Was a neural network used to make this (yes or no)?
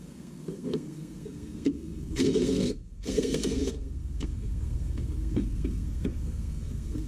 yes